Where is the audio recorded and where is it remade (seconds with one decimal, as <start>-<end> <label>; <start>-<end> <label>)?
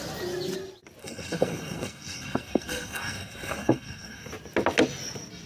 0.0-1.0 recorded; 1.0-4.3 remade; 4.3-5.5 recorded